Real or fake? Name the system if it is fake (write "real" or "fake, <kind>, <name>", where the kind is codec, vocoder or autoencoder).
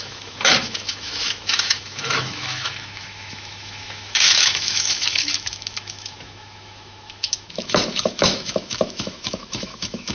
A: fake, autoencoder, DAC-VAE